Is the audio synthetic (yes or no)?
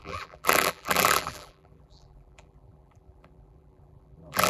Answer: yes